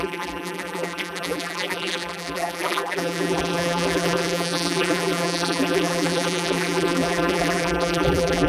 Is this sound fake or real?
fake